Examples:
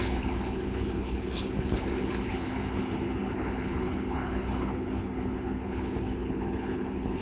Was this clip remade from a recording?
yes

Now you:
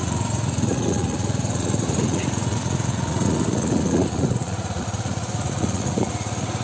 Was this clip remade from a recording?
yes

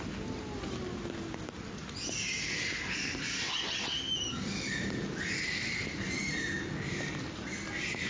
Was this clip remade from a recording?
no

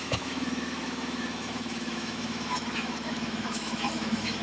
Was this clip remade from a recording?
yes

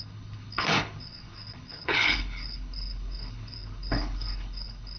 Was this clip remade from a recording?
yes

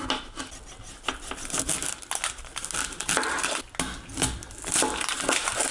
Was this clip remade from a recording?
no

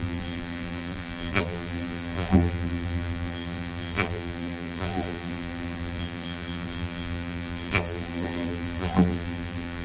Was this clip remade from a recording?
yes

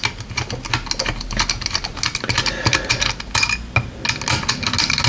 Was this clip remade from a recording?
no